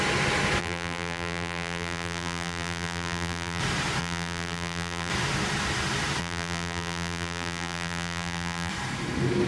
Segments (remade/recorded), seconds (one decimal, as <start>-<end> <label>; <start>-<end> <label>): 0.0-0.6 recorded; 0.6-3.6 remade; 3.6-4.0 recorded; 4.0-5.1 remade; 5.1-6.2 recorded; 6.2-8.7 remade; 8.7-9.5 recorded